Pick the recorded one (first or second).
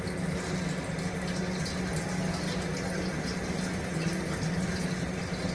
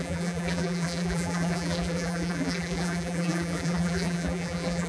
first